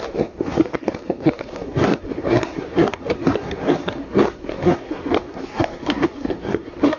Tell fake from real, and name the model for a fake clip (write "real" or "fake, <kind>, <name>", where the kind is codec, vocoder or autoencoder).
fake, codec, SNAC